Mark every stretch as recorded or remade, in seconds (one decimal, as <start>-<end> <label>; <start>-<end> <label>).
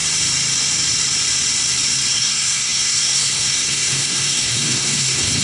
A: 0.0-2.1 recorded; 2.1-5.4 remade